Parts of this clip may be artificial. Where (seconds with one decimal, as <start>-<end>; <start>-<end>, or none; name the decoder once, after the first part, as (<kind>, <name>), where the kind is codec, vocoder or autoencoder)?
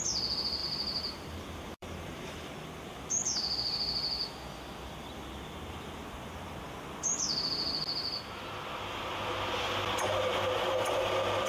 0.6-2.3 (vocoder, BigVGAN v2)